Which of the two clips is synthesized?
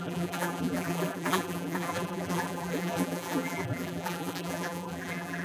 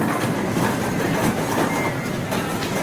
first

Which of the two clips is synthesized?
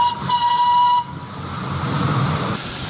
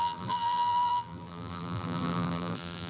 second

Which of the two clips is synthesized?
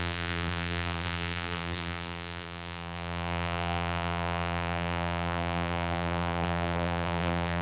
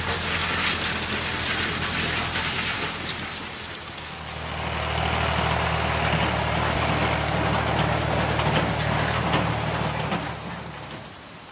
first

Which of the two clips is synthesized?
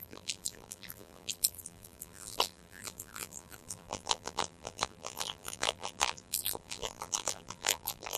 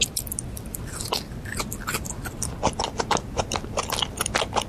first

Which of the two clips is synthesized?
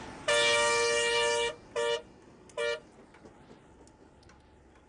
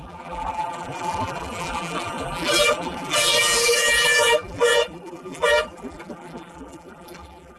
second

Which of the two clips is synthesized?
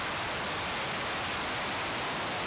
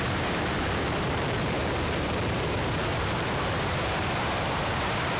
second